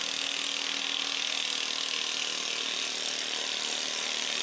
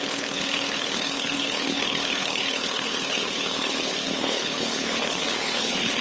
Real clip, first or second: first